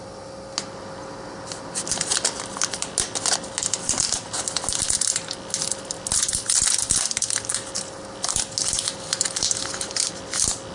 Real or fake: real